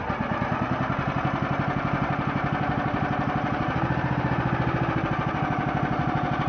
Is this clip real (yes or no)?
yes